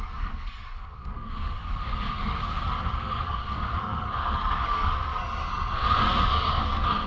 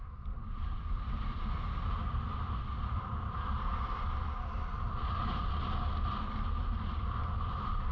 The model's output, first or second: first